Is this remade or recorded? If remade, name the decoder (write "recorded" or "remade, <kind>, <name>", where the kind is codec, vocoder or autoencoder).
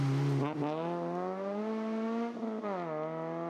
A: recorded